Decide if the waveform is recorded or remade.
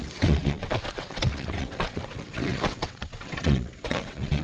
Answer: remade